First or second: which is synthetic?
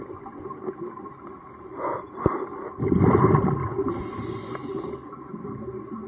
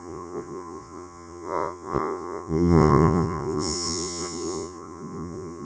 second